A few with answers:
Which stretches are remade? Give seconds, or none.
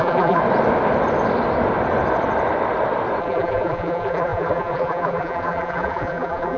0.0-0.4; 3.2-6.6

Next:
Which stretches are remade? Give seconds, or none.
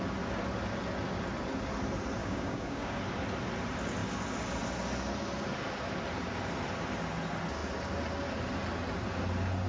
2.2-3.0